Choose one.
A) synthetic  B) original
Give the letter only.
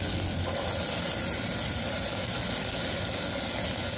B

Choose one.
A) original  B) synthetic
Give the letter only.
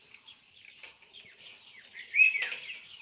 A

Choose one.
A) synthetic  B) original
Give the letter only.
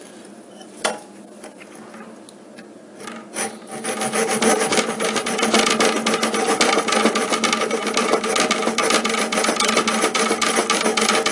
B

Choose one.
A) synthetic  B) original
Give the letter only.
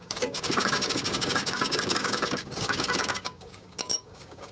A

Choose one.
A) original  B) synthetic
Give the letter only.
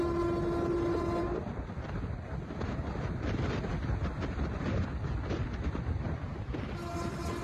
A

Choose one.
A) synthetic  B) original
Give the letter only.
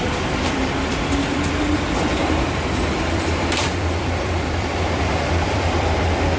A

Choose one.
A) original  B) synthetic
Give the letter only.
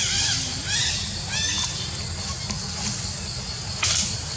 A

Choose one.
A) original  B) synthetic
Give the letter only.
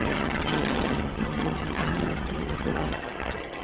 B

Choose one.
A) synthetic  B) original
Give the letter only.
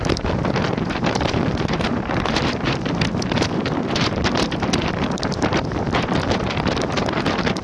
A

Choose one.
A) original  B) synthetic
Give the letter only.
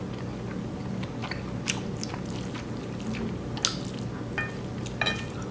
A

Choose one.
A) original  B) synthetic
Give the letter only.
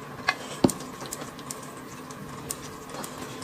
A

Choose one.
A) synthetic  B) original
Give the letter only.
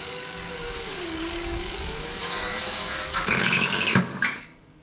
A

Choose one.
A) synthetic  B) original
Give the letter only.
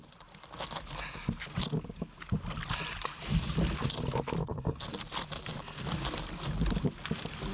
B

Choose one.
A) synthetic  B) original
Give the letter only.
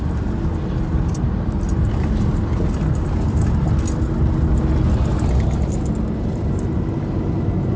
B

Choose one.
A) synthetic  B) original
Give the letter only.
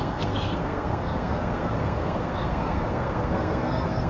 A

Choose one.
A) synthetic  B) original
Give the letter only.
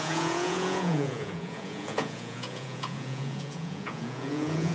A